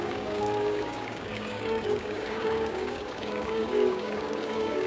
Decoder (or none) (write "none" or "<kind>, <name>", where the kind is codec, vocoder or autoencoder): codec, DAC